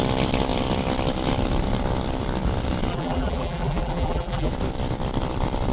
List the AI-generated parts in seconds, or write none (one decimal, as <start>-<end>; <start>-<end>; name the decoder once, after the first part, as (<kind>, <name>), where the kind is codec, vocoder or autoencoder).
2.9-4.5 (vocoder, BigVGAN v2)